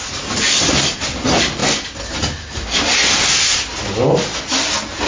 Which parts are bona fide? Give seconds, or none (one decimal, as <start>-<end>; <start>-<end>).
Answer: 0.0-5.1